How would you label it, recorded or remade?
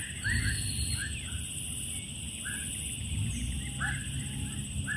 recorded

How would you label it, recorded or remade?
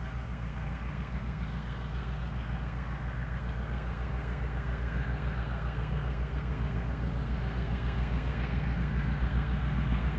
remade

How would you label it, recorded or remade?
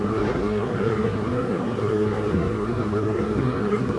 remade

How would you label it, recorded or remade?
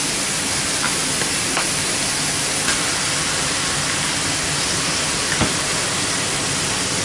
recorded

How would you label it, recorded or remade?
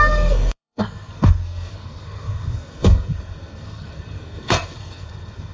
remade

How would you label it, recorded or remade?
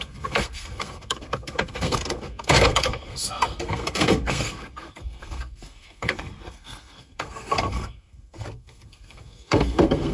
remade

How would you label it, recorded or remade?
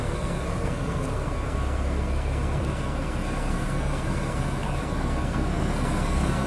remade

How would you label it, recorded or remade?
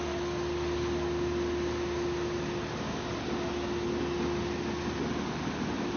recorded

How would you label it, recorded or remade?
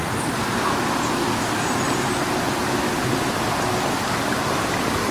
recorded